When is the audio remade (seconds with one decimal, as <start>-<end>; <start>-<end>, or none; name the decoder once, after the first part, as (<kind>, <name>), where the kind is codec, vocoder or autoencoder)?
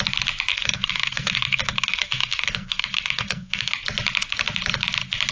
0.5-3.7 (codec, SNAC)